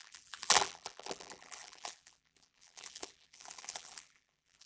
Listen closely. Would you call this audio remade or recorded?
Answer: remade